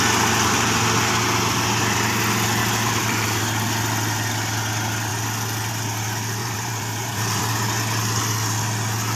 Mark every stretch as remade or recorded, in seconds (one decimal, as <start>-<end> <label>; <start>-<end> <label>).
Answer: 0.0-2.6 recorded; 2.6-3.4 remade; 3.4-6.4 recorded; 6.4-7.4 remade; 7.4-9.2 recorded